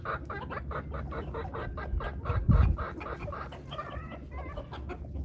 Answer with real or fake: real